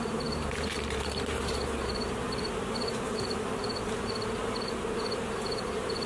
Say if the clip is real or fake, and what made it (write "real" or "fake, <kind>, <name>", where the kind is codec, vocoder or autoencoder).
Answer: fake, vocoder, BigVGAN v2